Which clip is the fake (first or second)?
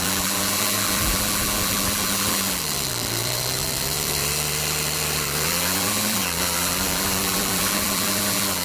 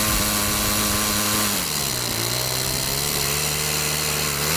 first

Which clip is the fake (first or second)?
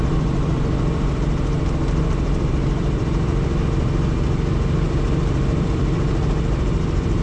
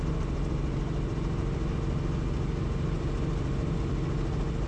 first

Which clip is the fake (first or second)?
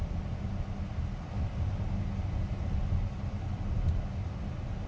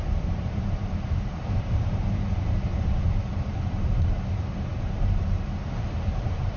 second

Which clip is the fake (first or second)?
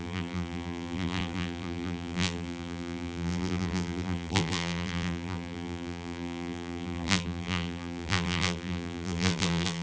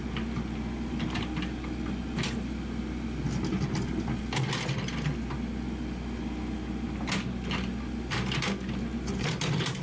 first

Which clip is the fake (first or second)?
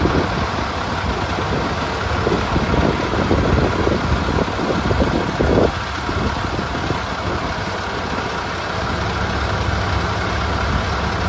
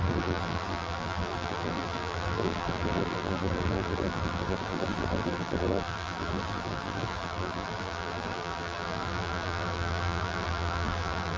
second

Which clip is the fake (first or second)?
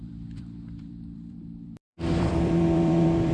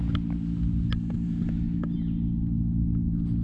first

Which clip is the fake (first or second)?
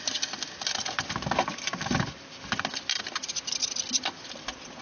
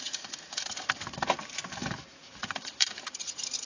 second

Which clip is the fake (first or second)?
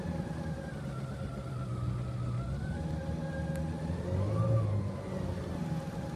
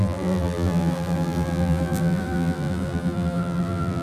second